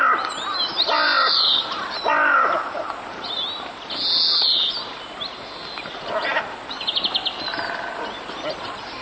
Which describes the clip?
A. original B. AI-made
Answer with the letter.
A